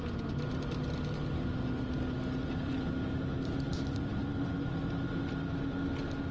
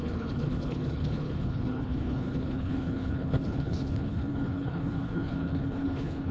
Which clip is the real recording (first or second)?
first